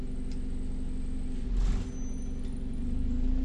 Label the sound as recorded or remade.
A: recorded